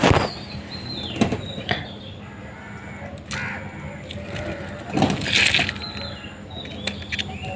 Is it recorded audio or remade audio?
recorded